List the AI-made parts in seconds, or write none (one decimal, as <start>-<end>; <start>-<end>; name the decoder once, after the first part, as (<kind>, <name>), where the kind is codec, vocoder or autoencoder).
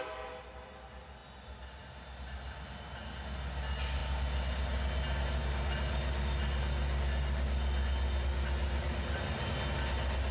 none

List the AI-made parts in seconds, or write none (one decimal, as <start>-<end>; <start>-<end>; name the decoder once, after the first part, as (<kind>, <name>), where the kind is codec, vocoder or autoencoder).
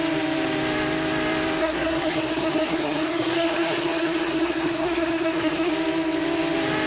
1.6-5.7 (codec, SNAC)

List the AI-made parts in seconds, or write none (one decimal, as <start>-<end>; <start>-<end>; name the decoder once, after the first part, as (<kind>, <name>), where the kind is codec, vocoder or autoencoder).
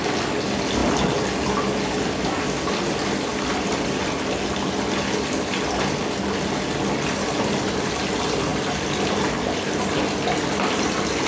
none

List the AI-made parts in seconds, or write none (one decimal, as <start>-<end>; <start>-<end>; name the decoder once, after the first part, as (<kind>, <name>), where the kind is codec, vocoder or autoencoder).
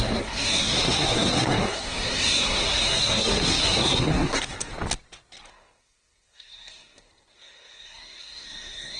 0.0-4.7 (codec, SNAC); 5.5-9.0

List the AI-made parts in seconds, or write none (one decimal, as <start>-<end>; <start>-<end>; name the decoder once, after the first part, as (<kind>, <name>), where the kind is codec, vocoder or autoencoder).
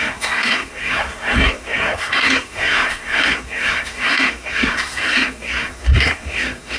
0.0-6.8 (codec, SNAC)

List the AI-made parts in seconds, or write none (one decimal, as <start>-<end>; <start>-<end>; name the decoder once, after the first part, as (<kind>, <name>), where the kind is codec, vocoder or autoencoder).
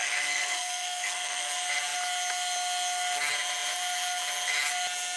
0.0-1.5 (codec, SNAC)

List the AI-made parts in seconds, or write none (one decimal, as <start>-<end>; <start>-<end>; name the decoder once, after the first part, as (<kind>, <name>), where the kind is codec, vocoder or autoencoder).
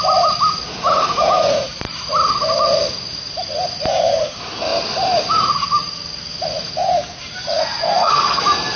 7.8-8.4 (codec, SNAC)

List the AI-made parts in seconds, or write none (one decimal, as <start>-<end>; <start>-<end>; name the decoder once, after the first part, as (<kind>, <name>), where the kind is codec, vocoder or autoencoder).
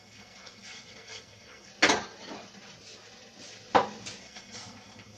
0.0-1.7 (codec, SNAC); 4.2-5.2